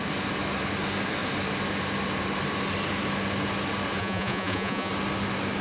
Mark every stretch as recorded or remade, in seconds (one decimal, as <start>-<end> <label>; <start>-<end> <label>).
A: 0.0-4.0 recorded; 4.0-4.9 remade; 4.9-5.6 recorded